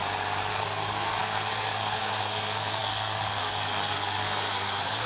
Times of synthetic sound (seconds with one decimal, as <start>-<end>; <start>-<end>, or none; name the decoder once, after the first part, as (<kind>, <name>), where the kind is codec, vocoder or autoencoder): 0.5-5.1 (codec, SNAC)